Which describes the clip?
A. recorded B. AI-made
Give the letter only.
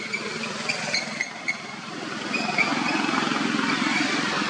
A